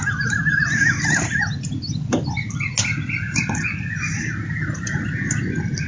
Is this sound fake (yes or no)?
no